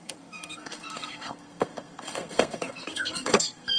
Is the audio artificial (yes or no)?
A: yes